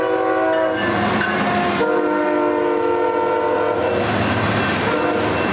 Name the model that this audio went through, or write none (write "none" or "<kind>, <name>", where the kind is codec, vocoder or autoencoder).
none